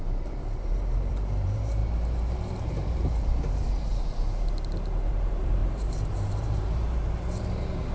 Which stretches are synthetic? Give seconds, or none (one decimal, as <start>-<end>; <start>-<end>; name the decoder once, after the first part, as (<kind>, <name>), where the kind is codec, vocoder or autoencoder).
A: 0.0-3.9 (vocoder, BigVGAN v2); 5.1-7.9